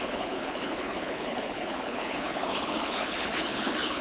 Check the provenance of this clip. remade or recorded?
remade